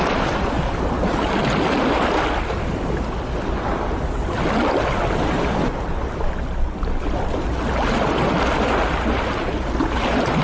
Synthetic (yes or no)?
no